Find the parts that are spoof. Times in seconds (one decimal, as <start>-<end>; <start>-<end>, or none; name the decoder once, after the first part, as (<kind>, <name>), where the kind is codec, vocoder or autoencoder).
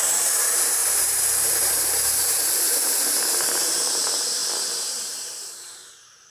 0.0-6.3 (vocoder, BigVGAN v2)